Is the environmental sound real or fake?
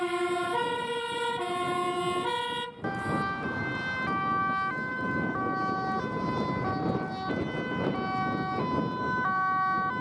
real